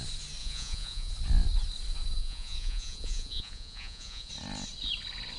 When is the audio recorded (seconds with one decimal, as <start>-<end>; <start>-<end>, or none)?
0.0-0.4; 1.1-2.2; 4.3-5.4